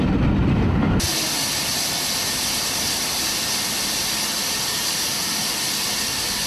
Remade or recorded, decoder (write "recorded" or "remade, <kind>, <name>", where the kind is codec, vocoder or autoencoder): recorded